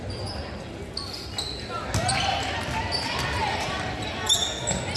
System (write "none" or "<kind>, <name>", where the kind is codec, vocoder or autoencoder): none